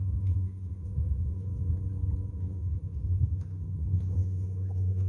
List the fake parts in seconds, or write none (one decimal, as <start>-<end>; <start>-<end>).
0.0-1.5; 2.3-5.1